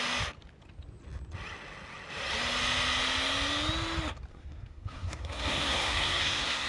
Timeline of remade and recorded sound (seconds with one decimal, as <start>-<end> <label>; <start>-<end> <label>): 0.0-4.3 recorded; 4.3-6.7 remade